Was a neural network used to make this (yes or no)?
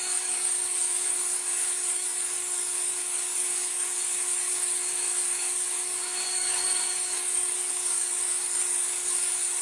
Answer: yes